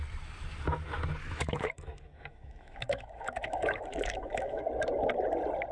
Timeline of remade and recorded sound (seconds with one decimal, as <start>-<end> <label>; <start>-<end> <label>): 0.0-1.2 recorded; 1.2-4.6 remade; 4.6-5.7 recorded

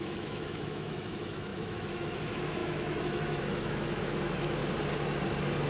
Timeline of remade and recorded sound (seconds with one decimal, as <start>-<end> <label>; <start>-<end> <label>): 0.0-4.6 remade; 4.6-5.7 recorded

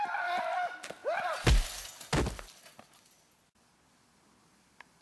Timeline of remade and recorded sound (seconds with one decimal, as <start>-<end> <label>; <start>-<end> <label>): 0.0-5.0 recorded

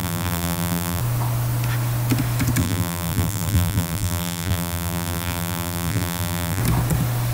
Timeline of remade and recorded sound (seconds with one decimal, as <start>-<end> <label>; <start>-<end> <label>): 0.0-1.0 remade; 1.0-2.6 recorded; 2.6-6.6 remade; 6.6-7.3 recorded

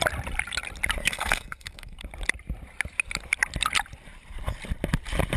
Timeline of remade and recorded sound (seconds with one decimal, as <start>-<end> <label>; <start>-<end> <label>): 0.0-1.0 recorded; 1.0-2.0 remade; 2.0-5.4 recorded